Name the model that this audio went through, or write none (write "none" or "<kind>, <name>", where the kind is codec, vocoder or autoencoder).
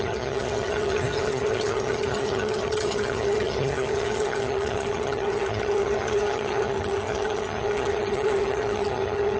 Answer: vocoder, HiFi-GAN